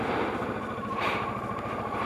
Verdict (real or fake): real